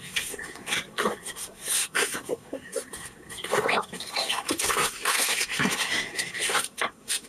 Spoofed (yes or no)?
yes